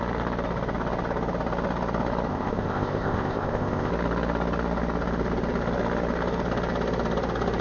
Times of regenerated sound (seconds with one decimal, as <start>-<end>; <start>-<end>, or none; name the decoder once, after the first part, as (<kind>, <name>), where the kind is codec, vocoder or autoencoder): 2.3-3.9 (codec, ZipCodec)